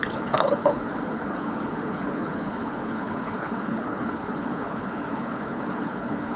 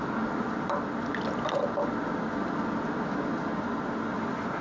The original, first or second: second